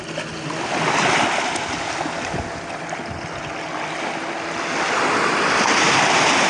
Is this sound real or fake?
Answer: real